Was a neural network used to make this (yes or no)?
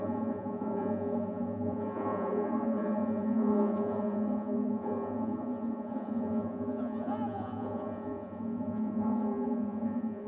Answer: yes